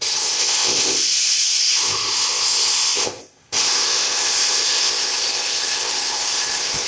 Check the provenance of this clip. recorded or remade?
remade